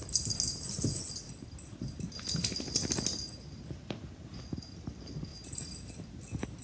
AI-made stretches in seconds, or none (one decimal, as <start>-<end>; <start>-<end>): none